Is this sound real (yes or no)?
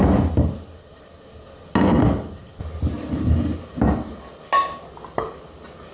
yes